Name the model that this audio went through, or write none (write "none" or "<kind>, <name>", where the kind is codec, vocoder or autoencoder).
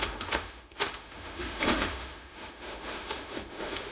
autoencoder, DAC-VAE